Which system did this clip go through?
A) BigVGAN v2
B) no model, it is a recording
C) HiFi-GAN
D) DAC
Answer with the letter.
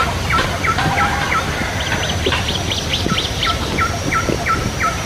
A